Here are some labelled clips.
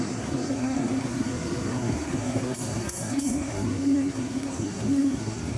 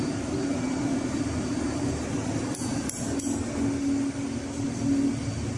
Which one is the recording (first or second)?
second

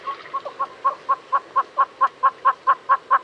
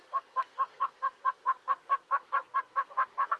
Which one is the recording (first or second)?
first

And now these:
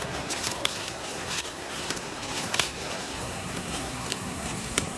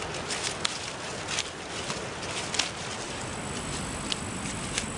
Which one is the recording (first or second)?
second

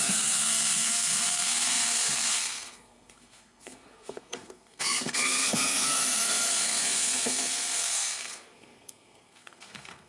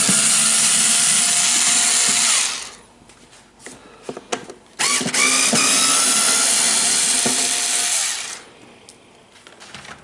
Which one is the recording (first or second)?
second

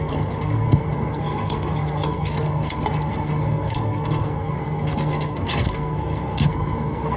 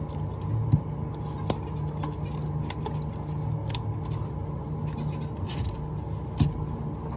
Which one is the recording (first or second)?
second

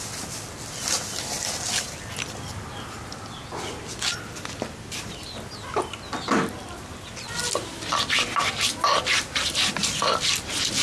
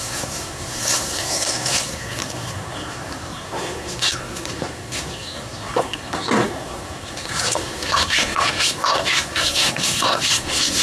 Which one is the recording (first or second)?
first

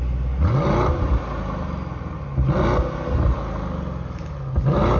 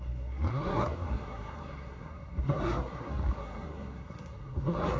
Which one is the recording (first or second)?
first